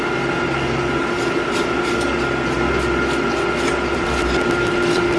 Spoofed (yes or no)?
no